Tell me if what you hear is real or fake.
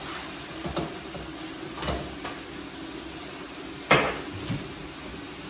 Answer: real